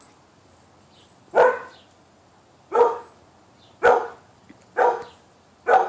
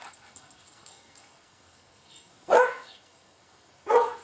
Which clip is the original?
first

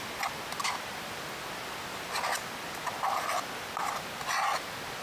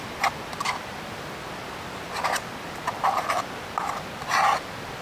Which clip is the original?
first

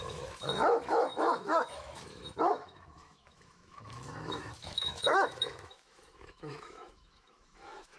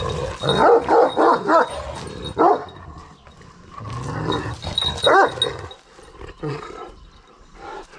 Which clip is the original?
second